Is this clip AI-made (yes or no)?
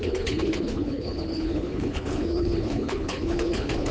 yes